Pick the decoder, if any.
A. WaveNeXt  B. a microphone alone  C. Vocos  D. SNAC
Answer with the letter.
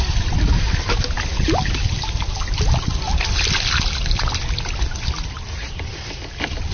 B